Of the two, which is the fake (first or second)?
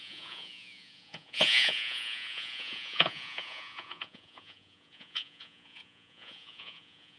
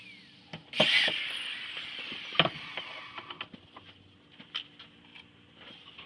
first